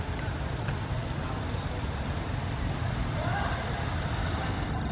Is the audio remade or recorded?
recorded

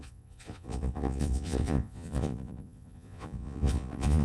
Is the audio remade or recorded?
remade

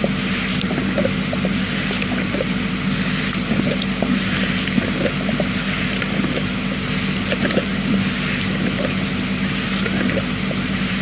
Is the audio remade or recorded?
recorded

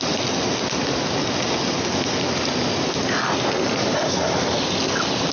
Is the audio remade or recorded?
recorded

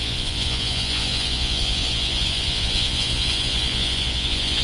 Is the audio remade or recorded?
remade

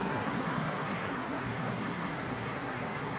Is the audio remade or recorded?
remade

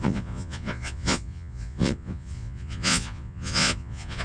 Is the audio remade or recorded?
remade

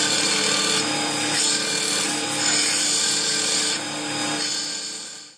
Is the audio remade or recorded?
recorded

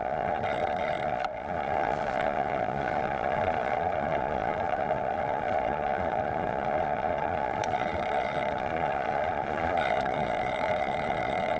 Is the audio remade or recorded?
remade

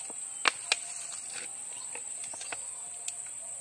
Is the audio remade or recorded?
recorded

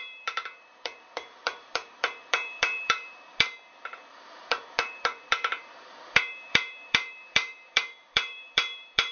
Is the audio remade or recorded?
remade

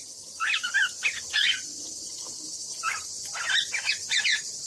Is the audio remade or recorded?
recorded